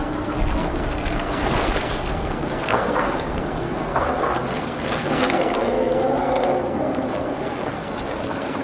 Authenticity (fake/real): fake